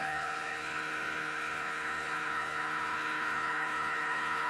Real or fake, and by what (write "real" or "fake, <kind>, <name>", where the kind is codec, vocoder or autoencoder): fake, codec, HILCodec